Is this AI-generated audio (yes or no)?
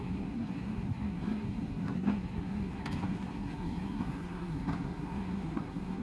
yes